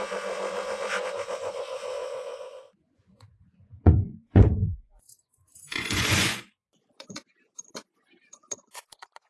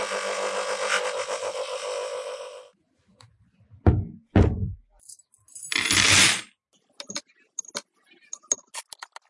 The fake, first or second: first